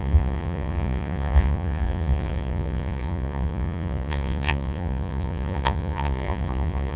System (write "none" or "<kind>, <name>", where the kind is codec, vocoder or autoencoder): vocoder, Vocos